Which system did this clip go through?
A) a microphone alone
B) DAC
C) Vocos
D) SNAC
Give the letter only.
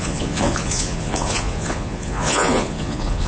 C